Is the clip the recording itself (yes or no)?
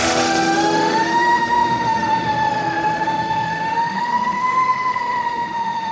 no